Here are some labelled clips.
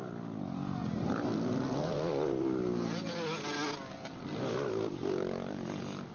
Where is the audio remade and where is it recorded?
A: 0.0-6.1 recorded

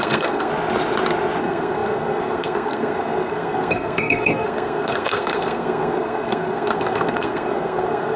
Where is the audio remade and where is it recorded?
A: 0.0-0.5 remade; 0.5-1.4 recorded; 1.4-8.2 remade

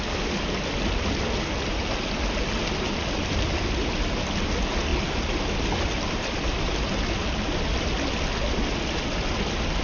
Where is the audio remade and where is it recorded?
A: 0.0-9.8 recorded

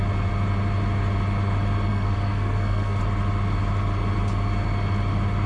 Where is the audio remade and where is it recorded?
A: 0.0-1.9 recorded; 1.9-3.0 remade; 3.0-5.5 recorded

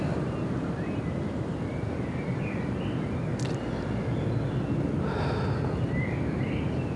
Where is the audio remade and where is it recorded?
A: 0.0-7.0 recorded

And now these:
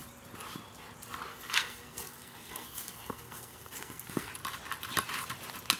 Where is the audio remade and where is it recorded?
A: 0.0-1.3 recorded; 1.3-4.3 remade; 4.3-5.8 recorded